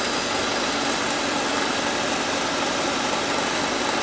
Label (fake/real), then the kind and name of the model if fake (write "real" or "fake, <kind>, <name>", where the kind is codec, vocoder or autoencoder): real